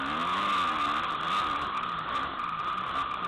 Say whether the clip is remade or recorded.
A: recorded